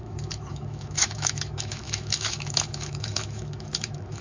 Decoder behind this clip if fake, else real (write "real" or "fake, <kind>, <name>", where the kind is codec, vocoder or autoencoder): fake, autoencoder, DAC-VAE